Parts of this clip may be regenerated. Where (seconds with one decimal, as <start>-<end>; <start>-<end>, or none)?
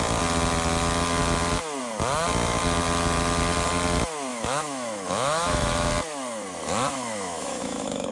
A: 4.3-5.9; 6.9-8.1